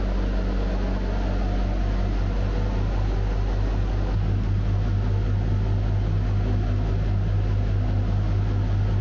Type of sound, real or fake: real